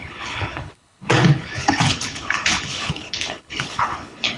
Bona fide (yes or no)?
no